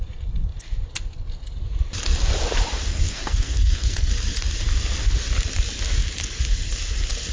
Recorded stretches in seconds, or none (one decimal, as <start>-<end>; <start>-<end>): 0.0-2.9; 4.1-7.3